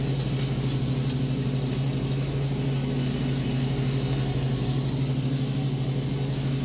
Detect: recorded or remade recorded